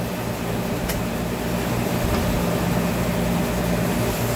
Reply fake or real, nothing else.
real